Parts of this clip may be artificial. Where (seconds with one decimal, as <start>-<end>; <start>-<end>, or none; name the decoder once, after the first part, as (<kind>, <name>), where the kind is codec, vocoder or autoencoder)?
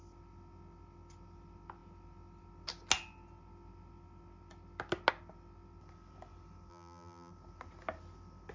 6.7-7.3 (vocoder, BigVGAN v2)